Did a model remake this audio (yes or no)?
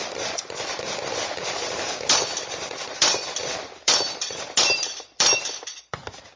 yes